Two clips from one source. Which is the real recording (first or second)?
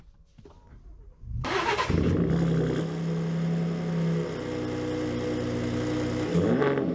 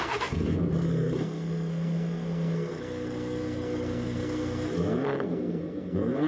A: first